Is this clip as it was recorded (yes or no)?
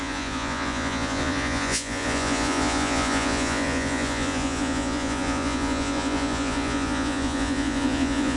no